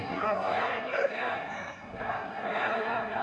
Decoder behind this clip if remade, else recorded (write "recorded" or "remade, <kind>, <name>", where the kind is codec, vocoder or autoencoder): remade, codec, SNAC